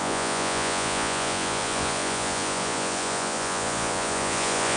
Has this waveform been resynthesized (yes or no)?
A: yes